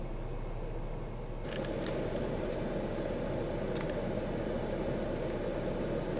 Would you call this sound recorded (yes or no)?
yes